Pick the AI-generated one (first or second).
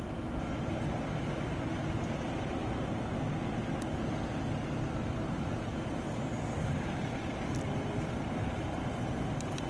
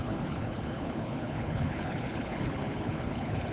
second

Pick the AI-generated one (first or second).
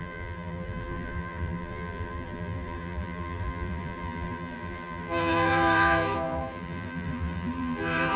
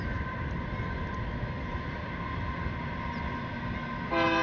first